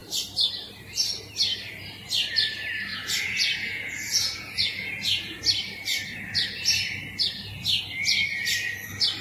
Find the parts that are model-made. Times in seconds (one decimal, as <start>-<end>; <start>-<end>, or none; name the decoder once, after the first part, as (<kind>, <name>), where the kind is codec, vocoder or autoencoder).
2.9-5.4 (vocoder, Vocos)